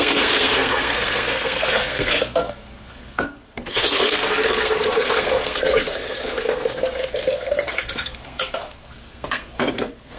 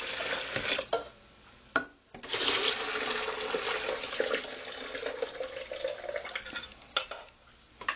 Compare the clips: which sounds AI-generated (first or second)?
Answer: first